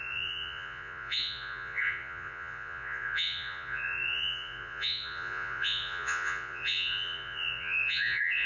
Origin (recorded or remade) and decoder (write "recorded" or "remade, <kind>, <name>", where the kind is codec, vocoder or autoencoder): remade, vocoder, Vocos